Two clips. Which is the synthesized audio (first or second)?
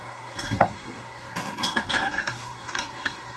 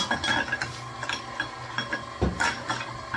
first